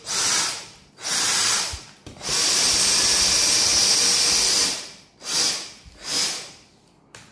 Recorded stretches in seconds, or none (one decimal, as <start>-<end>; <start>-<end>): 0.0-7.3